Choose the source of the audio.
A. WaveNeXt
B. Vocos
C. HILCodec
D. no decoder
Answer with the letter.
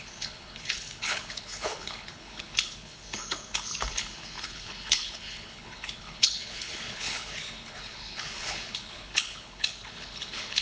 C